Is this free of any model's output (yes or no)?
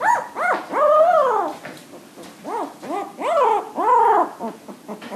yes